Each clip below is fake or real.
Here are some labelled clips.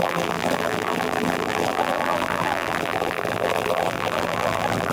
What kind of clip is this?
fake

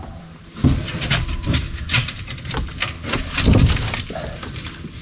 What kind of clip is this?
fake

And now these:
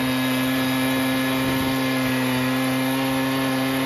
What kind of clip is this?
real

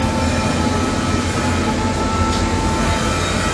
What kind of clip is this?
real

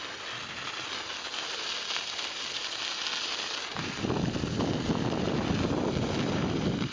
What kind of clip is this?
real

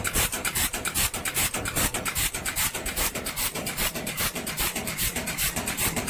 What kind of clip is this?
fake